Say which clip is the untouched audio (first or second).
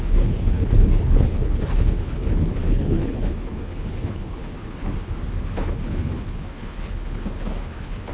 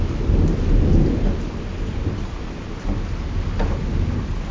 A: second